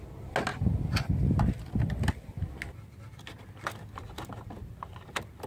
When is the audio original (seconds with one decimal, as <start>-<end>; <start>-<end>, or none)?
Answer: 0.0-5.5